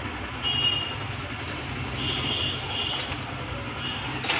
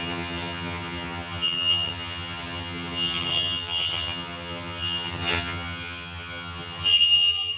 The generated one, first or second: second